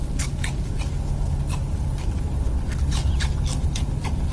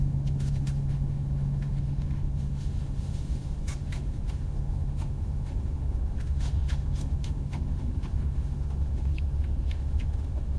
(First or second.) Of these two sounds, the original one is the first